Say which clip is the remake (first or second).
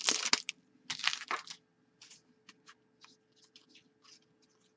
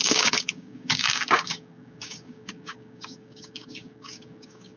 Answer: second